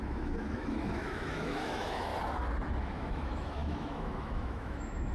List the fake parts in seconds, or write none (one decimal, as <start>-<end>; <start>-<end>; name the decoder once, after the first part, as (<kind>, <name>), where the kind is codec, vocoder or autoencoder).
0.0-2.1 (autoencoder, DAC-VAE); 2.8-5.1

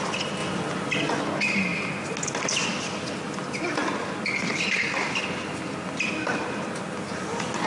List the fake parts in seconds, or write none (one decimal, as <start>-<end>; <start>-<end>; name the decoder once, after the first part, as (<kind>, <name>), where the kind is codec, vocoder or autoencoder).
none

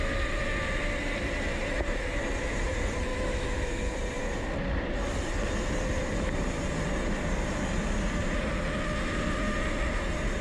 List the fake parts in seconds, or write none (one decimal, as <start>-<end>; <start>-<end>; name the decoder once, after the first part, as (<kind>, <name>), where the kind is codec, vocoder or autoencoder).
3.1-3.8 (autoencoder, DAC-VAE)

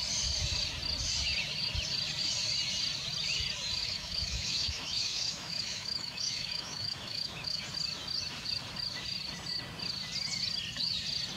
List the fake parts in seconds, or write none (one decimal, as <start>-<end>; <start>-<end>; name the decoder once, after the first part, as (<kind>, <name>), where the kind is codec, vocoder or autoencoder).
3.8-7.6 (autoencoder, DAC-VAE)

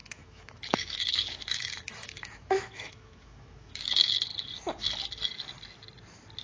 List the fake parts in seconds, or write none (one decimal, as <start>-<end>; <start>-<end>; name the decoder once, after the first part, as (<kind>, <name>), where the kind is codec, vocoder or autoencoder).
0.0-4.3 (autoencoder, DAC-VAE)

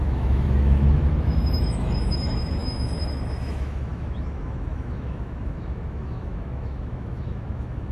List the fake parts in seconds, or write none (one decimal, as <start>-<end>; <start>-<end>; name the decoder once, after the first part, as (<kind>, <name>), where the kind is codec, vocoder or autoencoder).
0.0-7.9 (autoencoder, DAC-VAE)

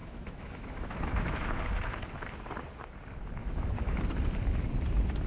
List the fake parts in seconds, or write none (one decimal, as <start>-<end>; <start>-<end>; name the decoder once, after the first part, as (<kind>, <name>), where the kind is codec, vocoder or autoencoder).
0.0-1.6 (autoencoder, DAC-VAE); 3.4-4.0

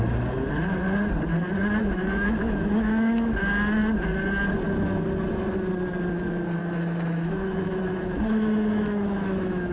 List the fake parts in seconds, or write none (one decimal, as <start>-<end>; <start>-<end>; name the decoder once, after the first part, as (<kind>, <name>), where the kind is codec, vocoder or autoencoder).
1.8-3.4 (autoencoder, DAC-VAE); 6.6-9.7